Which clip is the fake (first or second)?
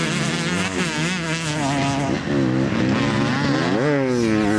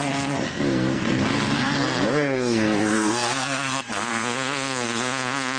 second